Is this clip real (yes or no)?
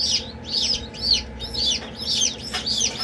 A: yes